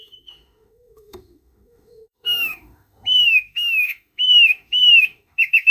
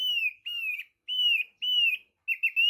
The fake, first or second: first